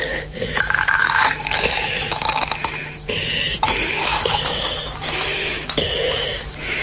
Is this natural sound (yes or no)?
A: no